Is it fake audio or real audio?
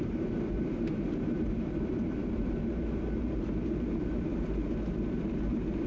fake